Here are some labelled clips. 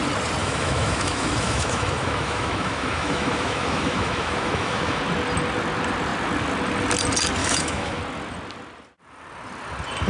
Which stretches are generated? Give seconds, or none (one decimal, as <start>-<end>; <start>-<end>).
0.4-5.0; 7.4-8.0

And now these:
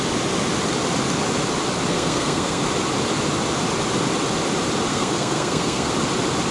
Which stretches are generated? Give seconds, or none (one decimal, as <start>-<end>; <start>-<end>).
1.9-2.6; 4.9-5.9

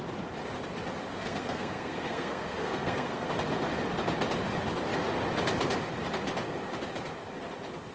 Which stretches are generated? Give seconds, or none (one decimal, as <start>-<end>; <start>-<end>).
1.1-3.3

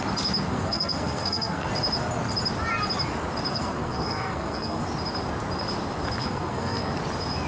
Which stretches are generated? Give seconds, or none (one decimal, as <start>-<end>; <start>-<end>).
0.5-1.7; 3.5-4.8; 6.2-6.9

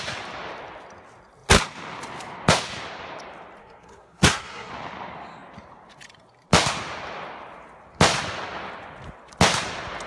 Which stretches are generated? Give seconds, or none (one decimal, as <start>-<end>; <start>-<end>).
3.6-4.7

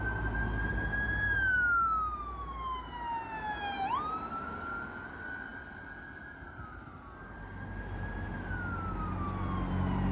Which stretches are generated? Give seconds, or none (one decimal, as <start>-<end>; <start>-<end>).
none